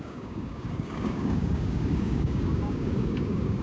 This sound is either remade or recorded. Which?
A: remade